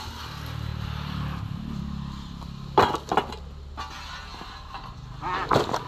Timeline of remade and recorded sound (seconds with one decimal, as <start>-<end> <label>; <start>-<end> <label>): 0.0-5.9 recorded